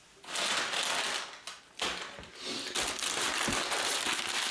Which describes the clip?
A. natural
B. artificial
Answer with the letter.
A